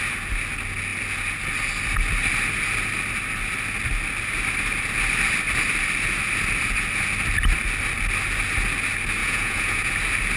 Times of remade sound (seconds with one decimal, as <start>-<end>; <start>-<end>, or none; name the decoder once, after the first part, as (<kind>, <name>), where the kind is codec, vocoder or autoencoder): 9.2-9.9 (vocoder, Vocos)